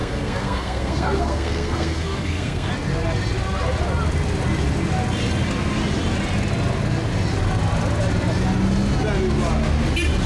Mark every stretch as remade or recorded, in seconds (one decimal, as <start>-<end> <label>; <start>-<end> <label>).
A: 0.0-2.7 remade; 2.7-10.3 recorded